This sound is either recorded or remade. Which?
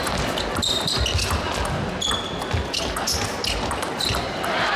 recorded